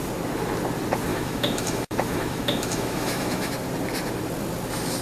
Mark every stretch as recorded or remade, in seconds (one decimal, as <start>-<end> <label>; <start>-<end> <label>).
0.0-1.1 recorded; 1.1-3.5 remade; 3.5-5.0 recorded